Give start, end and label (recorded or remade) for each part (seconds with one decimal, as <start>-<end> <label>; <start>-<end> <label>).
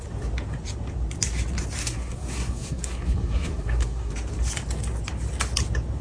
0.0-1.8 recorded; 1.8-4.1 remade; 4.1-6.0 recorded